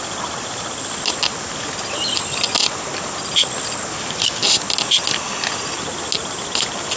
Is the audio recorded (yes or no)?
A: yes